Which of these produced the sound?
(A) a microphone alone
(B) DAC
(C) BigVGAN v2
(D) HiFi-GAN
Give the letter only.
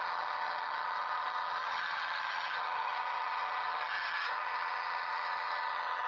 D